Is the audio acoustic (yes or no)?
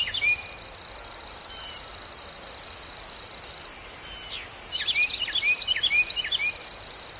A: yes